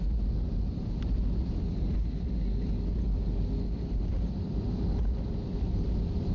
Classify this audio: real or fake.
fake